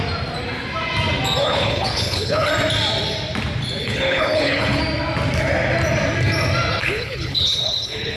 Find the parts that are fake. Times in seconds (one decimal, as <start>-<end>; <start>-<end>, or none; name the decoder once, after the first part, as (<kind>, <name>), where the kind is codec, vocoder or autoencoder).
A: 1.4-2.5 (codec, HILCodec); 3.8-4.8; 6.8-8.2